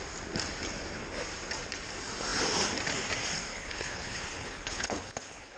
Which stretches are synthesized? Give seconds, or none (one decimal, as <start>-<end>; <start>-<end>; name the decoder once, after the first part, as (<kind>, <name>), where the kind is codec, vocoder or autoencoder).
3.5-5.6 (codec, HILCodec)